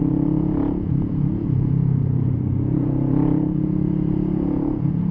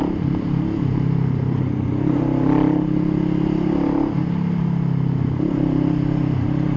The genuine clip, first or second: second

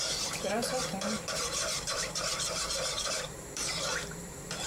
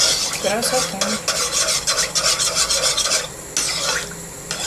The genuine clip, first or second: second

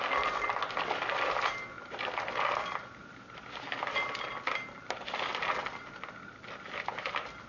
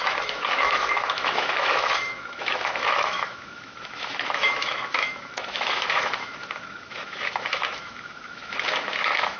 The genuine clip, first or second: first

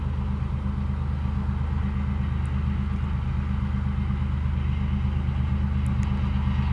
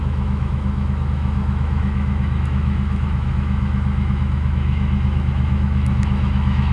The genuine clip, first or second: first